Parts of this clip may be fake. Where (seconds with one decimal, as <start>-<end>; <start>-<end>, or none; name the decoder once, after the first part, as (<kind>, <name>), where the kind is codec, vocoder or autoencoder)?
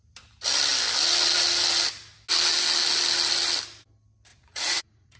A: 4.3-5.2 (vocoder, Vocos)